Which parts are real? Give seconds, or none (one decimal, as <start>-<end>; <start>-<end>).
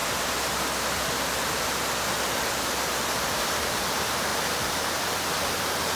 0.0-6.0